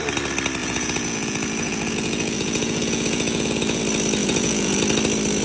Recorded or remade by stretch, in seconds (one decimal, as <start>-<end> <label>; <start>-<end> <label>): 0.0-0.6 recorded; 0.6-3.8 remade; 3.8-4.2 recorded; 4.2-4.8 remade; 4.8-5.4 recorded